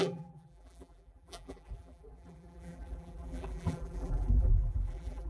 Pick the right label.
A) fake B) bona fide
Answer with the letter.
A